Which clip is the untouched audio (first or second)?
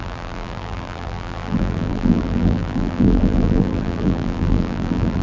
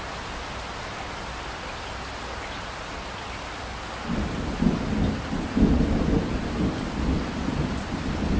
second